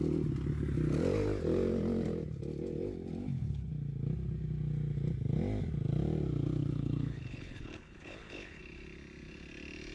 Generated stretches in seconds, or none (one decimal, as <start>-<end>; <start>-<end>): 3.2-3.7; 6.6-8.6